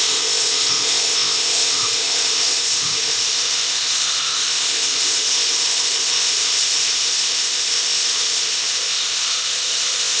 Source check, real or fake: fake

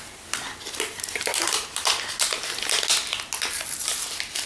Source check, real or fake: real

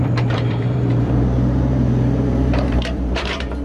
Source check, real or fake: fake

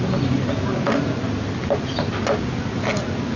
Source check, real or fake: real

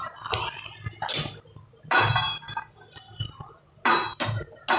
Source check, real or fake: real